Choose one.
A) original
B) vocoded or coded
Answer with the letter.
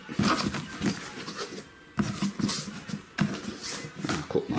A